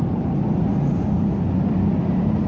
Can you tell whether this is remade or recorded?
recorded